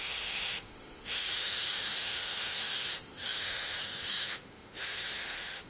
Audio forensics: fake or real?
fake